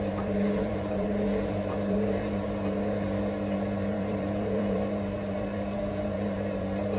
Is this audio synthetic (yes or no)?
yes